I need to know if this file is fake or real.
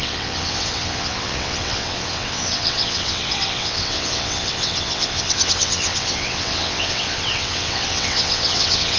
fake